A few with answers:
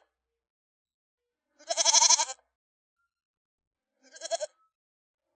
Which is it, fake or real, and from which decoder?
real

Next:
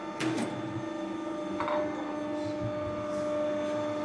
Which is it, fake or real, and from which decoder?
real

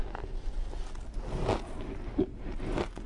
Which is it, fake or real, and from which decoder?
real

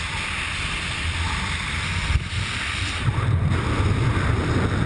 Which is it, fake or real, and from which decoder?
real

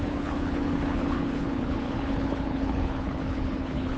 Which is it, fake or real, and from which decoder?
fake, codec, HILCodec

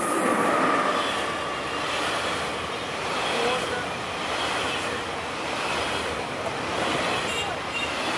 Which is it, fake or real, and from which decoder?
real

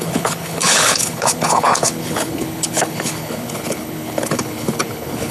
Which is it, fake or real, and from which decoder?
fake, codec, HILCodec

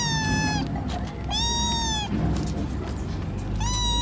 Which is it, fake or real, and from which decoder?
real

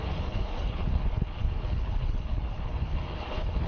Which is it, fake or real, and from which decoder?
fake, codec, HILCodec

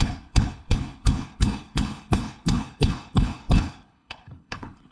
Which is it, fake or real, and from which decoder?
fake, codec, HILCodec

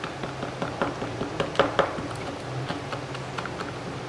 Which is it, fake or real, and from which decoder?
real